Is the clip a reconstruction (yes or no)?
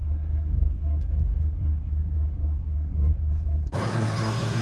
yes